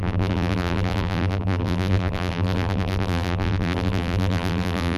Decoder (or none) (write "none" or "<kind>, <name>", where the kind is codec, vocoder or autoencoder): vocoder, BigVGAN v2